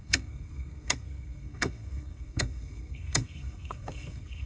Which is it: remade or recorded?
remade